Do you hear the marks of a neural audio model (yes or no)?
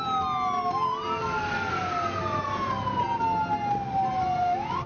no